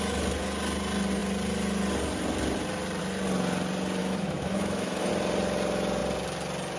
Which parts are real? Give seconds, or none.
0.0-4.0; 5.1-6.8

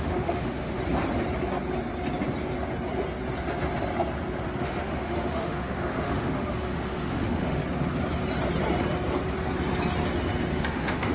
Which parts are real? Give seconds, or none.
0.8-4.6; 7.6-10.5